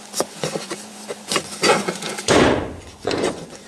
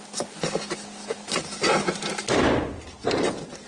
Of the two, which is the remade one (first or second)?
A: first